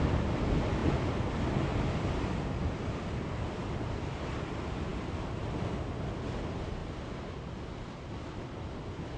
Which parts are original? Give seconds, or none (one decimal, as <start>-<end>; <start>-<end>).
0.0-0.8; 4.5-9.2